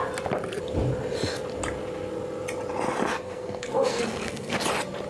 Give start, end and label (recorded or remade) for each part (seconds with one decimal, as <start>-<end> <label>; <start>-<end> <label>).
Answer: 0.0-3.1 recorded; 3.1-4.5 remade; 4.5-5.1 recorded